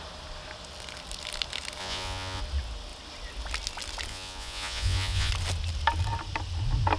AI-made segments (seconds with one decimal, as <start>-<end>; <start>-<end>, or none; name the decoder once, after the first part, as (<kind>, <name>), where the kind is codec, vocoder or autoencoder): 1.8-2.4 (vocoder, Vocos); 4.1-5.3